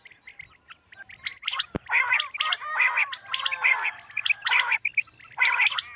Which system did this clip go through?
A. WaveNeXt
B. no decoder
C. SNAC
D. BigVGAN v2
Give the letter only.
B